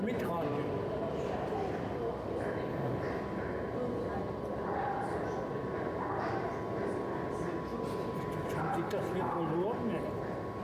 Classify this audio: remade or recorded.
recorded